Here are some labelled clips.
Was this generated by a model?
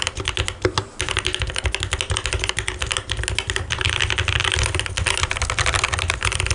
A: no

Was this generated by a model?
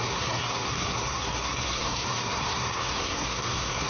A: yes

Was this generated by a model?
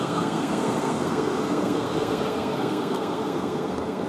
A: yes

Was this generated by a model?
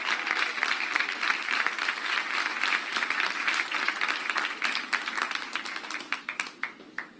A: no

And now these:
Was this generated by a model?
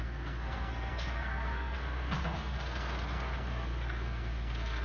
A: yes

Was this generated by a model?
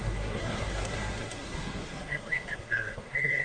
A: yes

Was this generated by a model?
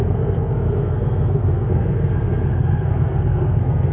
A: yes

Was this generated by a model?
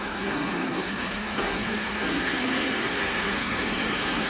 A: yes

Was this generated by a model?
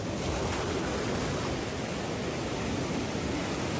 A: no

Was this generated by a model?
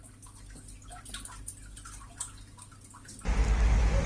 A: no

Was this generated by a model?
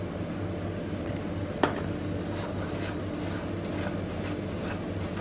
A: no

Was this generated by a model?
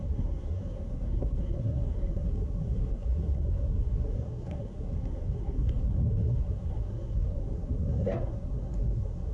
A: yes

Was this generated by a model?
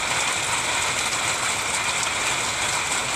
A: no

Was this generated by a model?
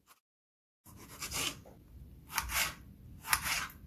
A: no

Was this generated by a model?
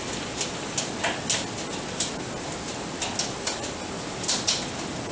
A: no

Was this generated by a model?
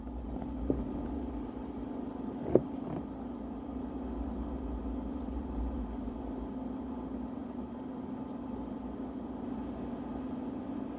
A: no